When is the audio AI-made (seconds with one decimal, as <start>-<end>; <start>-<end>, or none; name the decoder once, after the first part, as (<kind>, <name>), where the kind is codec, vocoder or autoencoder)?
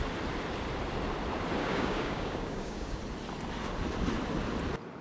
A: 1.6-3.0 (codec, DAC)